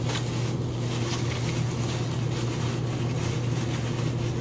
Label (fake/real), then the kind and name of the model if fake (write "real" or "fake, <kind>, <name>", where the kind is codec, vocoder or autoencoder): real